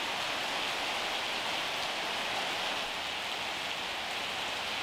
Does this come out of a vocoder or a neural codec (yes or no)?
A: no